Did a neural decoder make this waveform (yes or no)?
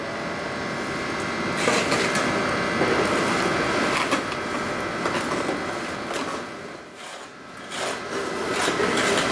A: no